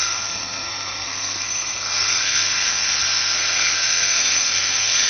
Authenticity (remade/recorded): remade